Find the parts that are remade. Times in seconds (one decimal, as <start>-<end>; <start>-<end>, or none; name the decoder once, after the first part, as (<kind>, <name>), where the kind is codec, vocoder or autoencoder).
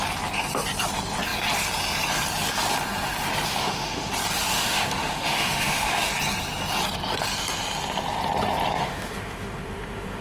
3.5-4.1 (autoencoder, DAC-VAE); 4.5-6.1; 8.8-10.2